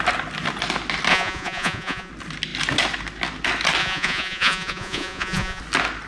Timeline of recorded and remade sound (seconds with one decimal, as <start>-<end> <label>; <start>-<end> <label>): 0.0-1.1 recorded; 1.1-2.1 remade; 2.1-3.8 recorded; 3.8-5.6 remade; 5.6-6.1 recorded